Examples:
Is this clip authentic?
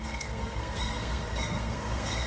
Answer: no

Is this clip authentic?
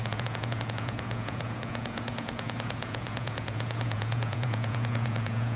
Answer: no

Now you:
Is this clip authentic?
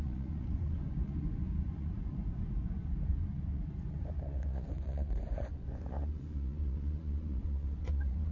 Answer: no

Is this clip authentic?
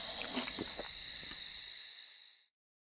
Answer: yes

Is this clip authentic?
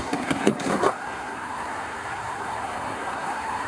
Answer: no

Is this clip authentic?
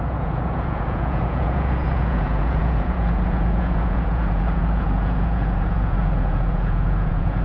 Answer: no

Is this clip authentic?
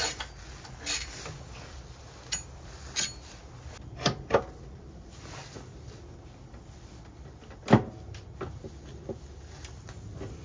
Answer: yes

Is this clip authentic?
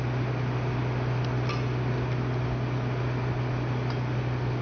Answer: yes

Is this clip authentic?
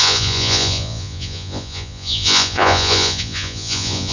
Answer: no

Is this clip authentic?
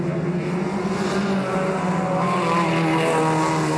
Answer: yes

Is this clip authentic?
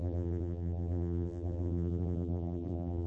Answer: no